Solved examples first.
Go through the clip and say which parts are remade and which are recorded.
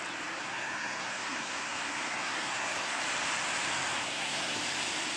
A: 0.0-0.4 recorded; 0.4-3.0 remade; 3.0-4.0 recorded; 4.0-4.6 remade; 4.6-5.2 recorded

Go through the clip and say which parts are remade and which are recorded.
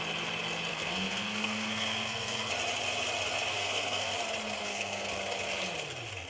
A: 0.0-0.7 recorded; 0.7-2.5 remade; 2.5-3.5 recorded; 3.5-4.1 remade; 4.1-4.6 recorded; 4.6-5.1 remade; 5.1-6.3 recorded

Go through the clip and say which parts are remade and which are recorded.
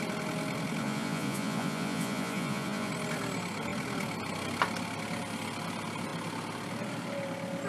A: 0.0-0.8 recorded; 0.8-2.9 remade; 2.9-7.7 recorded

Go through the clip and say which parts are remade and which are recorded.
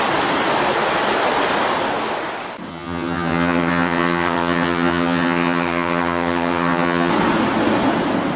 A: 0.0-2.7 recorded; 2.7-7.1 remade; 7.1-8.4 recorded